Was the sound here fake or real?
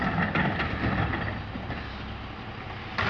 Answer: real